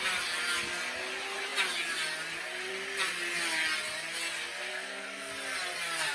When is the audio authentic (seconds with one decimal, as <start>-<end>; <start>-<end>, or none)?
0.0-4.7; 5.3-6.1